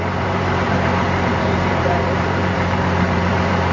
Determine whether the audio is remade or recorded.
remade